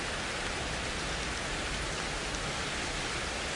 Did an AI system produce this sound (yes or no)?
no